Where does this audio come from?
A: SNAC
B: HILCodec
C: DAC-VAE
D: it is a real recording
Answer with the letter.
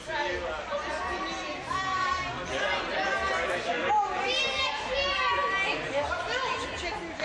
D